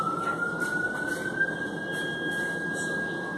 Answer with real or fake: real